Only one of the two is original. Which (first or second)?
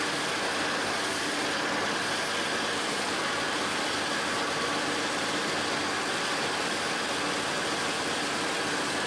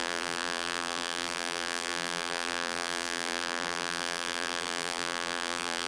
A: first